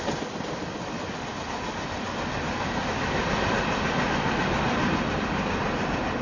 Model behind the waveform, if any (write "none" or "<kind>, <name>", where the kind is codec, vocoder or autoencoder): none